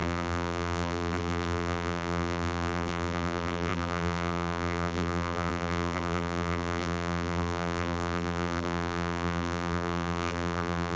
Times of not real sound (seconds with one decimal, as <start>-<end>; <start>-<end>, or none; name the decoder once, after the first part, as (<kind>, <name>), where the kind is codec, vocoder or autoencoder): 0.0-11.0 (vocoder, BigVGAN v2)